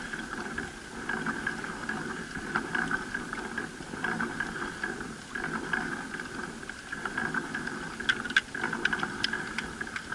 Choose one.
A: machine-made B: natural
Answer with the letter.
B